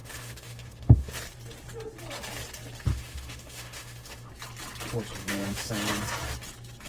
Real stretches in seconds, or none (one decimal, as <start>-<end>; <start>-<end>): 1.1-2.9; 4.3-5.2; 5.7-6.9